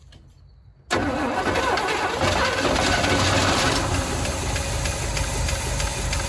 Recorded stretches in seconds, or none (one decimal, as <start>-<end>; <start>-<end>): 0.0-3.4; 4.8-6.3